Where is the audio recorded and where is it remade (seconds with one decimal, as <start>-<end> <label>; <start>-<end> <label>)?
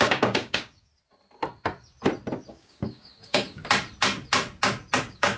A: 0.0-0.9 remade; 0.9-2.5 recorded; 2.5-3.6 remade; 3.6-5.0 recorded; 5.0-5.4 remade